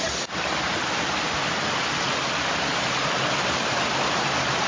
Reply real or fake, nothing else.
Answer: real